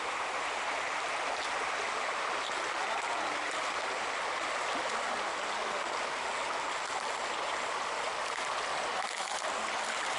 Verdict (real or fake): real